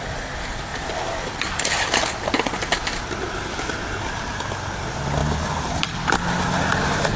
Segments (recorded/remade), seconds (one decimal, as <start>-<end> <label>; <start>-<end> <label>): 0.0-7.2 recorded